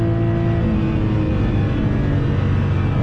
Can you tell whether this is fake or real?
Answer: real